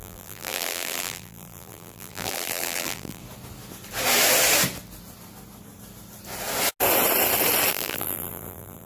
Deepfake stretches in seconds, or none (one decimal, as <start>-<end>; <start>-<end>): 0.0-3.2; 7.7-8.9